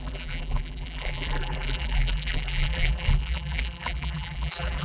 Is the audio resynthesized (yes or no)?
yes